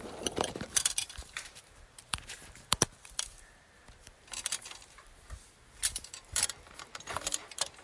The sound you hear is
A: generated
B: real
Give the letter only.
A